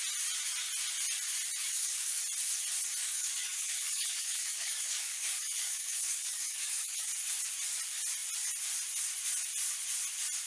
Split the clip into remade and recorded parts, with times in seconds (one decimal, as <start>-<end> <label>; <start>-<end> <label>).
0.0-1.6 recorded; 1.6-2.2 remade; 2.2-3.0 recorded; 3.0-7.1 remade; 7.1-10.5 recorded